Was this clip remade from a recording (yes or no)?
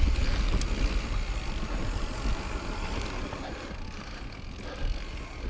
no